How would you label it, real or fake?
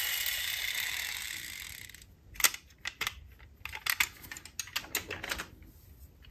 real